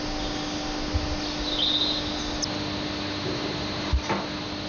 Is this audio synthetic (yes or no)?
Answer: no